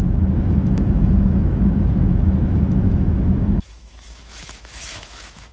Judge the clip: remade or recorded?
remade